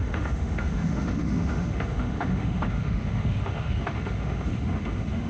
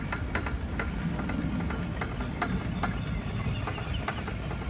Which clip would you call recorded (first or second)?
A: second